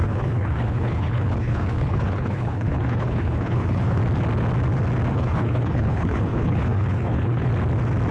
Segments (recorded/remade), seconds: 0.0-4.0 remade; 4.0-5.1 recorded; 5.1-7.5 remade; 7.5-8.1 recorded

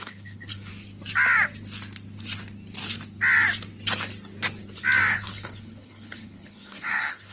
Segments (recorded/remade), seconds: 0.0-0.7 remade; 0.7-5.1 recorded; 5.1-7.3 remade

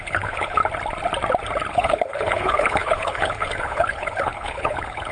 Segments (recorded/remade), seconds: 0.0-0.6 remade; 0.6-1.7 recorded; 1.7-5.1 remade

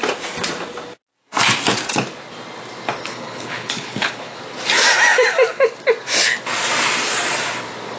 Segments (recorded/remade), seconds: 0.0-3.1 recorded; 3.1-4.4 remade; 4.4-8.0 recorded